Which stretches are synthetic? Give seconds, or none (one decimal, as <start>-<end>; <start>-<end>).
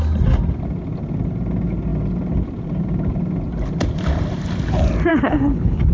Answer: 5.1-5.9